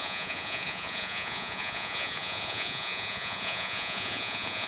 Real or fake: fake